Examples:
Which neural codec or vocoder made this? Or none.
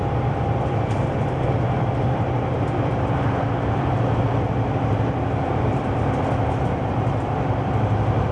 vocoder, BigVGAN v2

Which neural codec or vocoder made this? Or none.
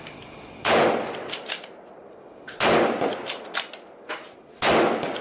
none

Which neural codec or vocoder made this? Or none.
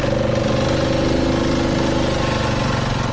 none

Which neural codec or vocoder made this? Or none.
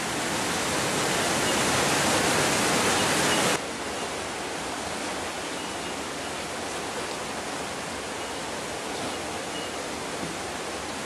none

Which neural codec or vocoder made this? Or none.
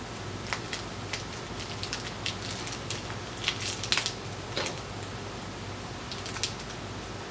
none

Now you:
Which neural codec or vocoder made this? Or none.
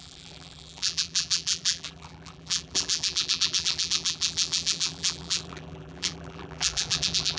vocoder, BigVGAN v2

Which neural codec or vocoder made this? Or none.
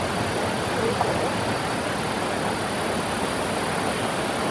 none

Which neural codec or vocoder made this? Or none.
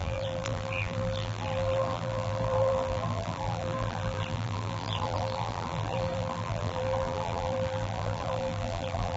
vocoder, BigVGAN v2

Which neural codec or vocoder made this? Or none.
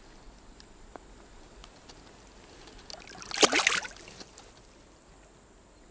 none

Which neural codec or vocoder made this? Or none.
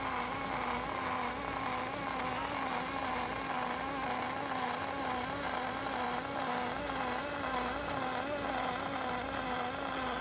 none